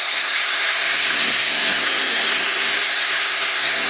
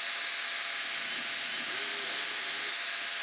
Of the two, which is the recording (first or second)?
second